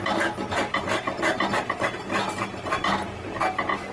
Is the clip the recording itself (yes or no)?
yes